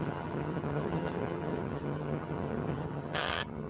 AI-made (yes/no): yes